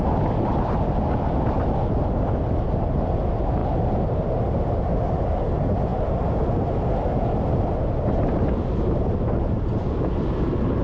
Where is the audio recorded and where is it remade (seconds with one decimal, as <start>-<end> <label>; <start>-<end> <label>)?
0.0-10.8 recorded